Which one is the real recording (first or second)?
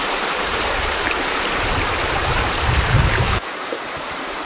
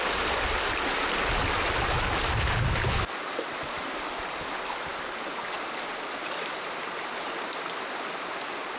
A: second